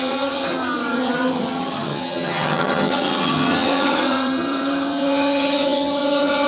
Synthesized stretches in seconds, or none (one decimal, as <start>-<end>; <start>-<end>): 0.0-6.5